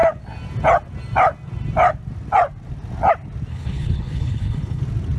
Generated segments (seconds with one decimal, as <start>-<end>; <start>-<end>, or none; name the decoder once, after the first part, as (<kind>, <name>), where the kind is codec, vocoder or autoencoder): 3.5-4.8 (codec, HILCodec)